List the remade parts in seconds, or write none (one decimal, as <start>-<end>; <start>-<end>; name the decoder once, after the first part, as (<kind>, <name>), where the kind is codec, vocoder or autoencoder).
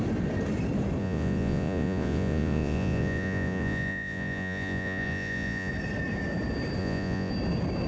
1.0-5.7 (vocoder, Vocos); 6.8-7.3